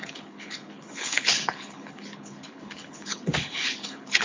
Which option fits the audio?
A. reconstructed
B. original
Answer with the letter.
A